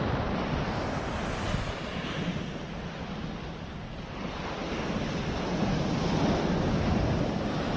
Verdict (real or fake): real